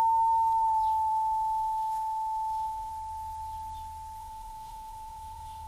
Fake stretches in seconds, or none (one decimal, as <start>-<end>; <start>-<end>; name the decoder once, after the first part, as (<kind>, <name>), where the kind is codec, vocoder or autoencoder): 1.1-2.9 (autoencoder, DAC-VAE); 4.2-5.7